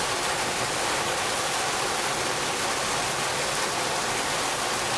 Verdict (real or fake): real